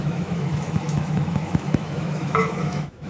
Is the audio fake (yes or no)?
yes